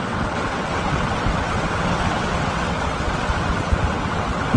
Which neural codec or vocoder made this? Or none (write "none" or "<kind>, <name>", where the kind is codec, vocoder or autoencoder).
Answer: vocoder, WaveNeXt